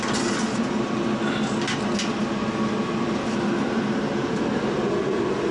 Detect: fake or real real